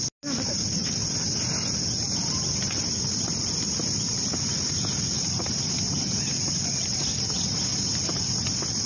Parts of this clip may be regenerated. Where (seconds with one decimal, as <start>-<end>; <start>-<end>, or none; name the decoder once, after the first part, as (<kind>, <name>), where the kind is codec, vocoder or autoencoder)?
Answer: none